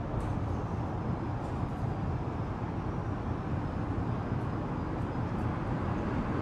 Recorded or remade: recorded